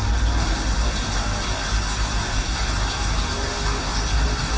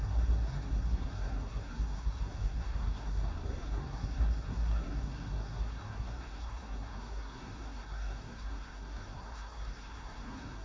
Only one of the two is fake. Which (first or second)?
second